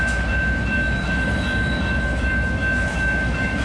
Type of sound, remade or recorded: remade